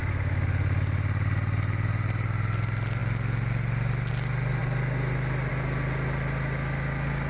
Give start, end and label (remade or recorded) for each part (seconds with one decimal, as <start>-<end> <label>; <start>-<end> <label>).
0.0-7.3 recorded